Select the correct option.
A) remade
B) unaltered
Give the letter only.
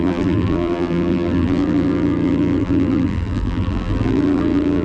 A